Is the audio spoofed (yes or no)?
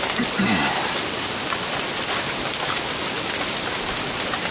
no